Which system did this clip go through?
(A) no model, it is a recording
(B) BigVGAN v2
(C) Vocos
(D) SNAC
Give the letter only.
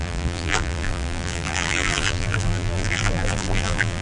B